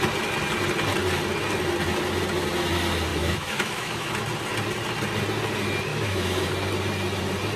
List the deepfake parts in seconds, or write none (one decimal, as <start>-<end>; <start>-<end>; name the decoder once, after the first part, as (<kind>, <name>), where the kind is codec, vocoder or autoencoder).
3.1-4.1 (autoencoder, DAC-VAE); 5.9-6.5